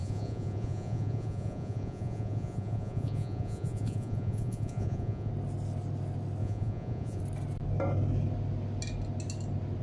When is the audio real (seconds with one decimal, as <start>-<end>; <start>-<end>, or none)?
5.3-6.4; 7.2-9.8